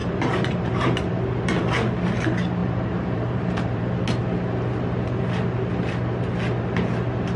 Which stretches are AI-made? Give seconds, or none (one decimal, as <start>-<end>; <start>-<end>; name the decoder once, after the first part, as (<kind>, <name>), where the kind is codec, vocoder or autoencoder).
0.0-1.1 (vocoder, BigVGAN v2); 2.6-3.9